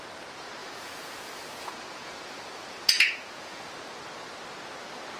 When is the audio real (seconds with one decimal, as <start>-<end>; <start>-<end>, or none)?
0.0-0.6; 3.7-5.2

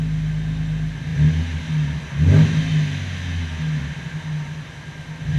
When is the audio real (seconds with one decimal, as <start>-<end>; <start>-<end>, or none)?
0.0-5.4

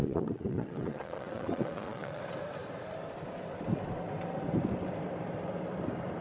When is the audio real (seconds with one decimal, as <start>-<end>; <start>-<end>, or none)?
2.2-6.2